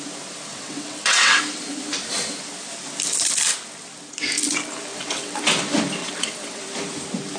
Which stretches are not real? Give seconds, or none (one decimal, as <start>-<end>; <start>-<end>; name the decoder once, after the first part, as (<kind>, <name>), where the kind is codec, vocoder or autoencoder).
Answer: 0.5-1.4 (vocoder, WaveNeXt); 4.9-5.4; 6.0-6.6